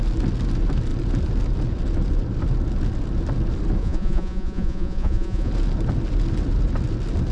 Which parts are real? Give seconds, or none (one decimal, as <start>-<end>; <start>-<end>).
0.0-3.8; 5.5-7.3